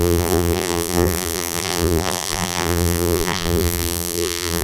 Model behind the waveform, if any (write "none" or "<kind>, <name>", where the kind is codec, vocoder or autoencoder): vocoder, BigVGAN v2